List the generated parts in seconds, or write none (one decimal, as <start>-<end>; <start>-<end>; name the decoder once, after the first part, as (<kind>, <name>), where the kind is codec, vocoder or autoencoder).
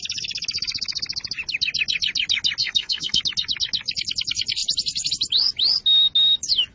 2.6-3.2 (codec, SNAC)